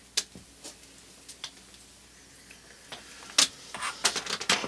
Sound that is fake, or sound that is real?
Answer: real